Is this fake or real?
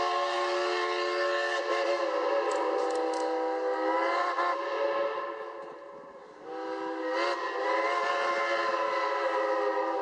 real